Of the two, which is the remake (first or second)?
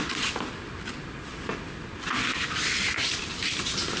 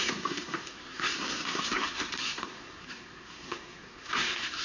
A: second